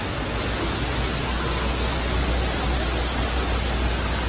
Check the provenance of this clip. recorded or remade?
recorded